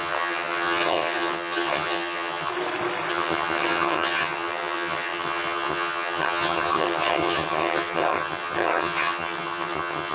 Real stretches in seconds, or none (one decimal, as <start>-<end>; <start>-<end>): 2.5-3.1